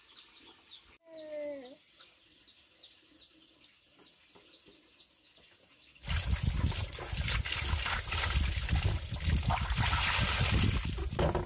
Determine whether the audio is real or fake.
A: real